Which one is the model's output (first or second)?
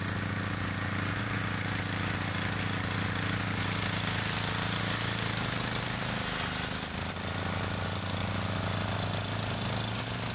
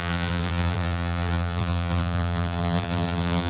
second